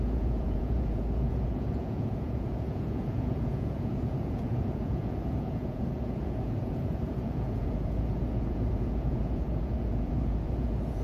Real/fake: fake